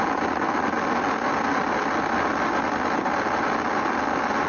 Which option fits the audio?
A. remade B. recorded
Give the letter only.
B